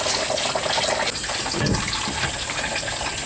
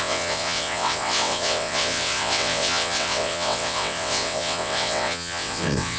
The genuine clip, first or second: first